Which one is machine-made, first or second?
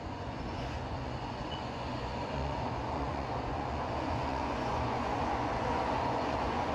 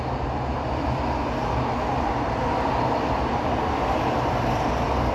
first